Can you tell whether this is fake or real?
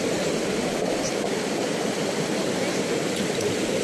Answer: real